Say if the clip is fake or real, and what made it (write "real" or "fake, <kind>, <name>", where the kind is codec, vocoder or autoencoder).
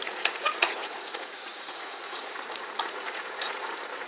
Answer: fake, vocoder, Vocos